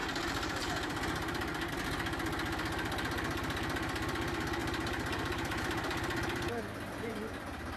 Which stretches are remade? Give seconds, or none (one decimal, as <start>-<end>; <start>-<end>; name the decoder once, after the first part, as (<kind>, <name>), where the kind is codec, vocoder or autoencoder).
0.0-1.7 (vocoder, BigVGAN v2); 4.6-6.6